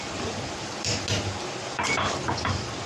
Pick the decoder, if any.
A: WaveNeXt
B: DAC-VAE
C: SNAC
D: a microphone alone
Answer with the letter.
D